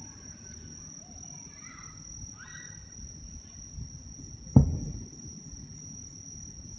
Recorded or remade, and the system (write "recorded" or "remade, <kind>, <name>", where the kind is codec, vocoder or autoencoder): recorded